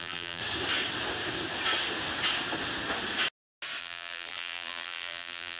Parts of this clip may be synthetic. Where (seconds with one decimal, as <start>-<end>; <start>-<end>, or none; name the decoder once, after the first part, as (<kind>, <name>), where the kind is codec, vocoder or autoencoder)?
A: 0.0-0.4 (vocoder, BigVGAN v2); 3.8-5.6